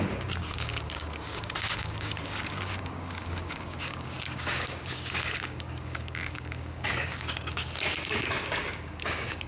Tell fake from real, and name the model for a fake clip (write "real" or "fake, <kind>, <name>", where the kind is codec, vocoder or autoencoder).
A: fake, codec, DAC